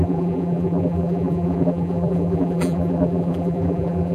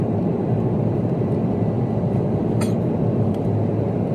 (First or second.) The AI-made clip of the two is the first